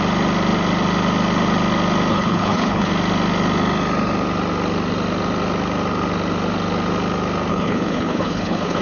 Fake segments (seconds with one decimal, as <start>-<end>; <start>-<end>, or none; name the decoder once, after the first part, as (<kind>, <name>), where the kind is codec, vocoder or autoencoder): 2.1-2.9 (codec, HILCodec); 7.5-8.8